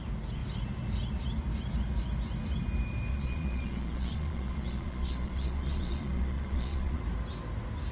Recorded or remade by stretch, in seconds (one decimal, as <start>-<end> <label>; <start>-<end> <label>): 0.0-3.1 recorded; 3.1-7.0 remade; 7.0-7.9 recorded